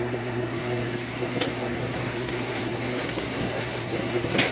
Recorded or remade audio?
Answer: remade